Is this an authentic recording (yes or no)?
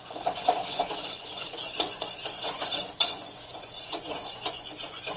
no